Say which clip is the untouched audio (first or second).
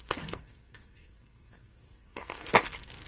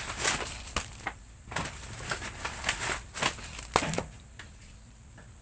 second